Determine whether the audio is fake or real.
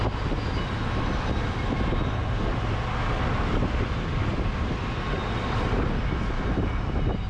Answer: real